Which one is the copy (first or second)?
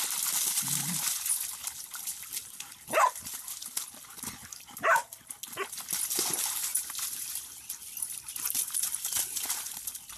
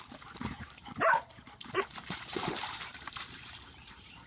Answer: second